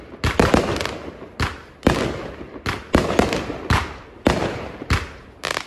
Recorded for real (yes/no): yes